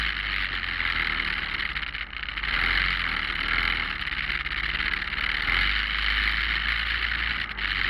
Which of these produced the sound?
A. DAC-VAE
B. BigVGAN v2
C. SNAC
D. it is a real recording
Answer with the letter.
D